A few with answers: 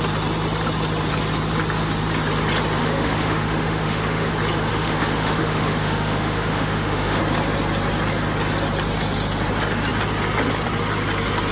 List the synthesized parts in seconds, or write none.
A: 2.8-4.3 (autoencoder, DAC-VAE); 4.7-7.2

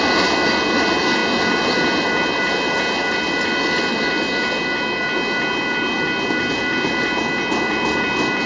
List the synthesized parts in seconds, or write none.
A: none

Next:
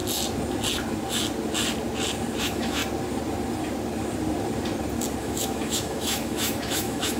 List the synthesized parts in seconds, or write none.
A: 2.4-2.8 (autoencoder, DAC-VAE); 5.2-7.2

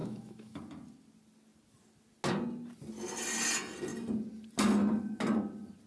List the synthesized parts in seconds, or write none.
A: 0.0-0.6 (autoencoder, DAC-VAE)

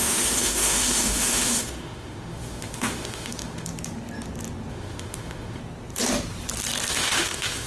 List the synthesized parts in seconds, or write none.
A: 0.0-3.7 (autoencoder, DAC-VAE); 4.7-5.6; 6.9-7.7